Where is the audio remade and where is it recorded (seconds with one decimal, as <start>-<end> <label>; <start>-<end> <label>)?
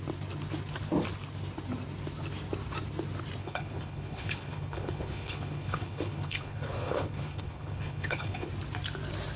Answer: 0.0-3.4 recorded; 3.4-8.5 remade; 8.5-9.4 recorded